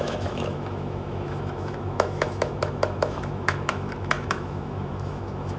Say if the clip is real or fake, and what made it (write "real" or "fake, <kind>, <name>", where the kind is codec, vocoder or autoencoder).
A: fake, autoencoder, DAC-VAE